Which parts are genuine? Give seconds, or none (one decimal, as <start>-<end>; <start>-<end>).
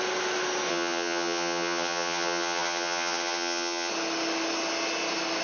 0.0-0.7; 3.9-5.4